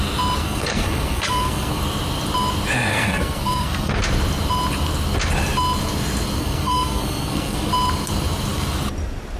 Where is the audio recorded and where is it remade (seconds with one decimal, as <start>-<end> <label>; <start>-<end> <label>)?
0.0-0.4 recorded; 0.4-1.8 remade; 1.8-2.9 recorded; 2.9-4.0 remade; 4.0-6.4 recorded; 6.4-7.7 remade; 7.7-9.4 recorded